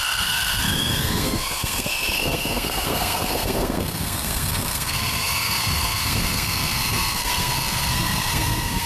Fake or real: fake